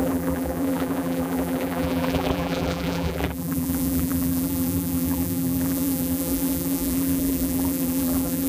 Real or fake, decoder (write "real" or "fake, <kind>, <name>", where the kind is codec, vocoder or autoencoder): fake, vocoder, BigVGAN v2